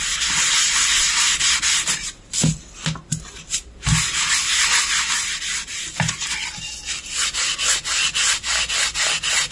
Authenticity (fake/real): real